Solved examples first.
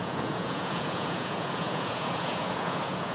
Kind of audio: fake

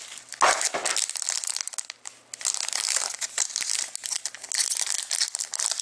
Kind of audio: real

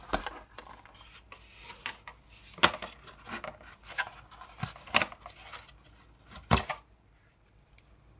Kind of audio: real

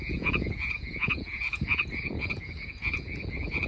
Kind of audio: fake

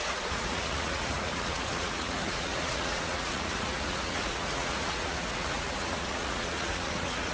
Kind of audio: fake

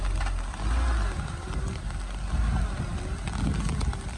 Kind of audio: real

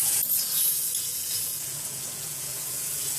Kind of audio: fake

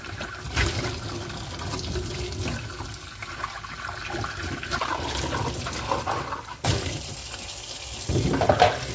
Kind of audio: real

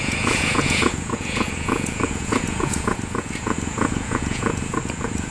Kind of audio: fake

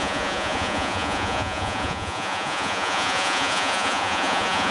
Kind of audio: fake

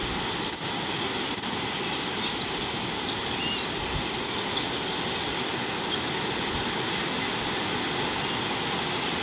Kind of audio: real